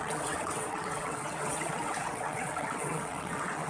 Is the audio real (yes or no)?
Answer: no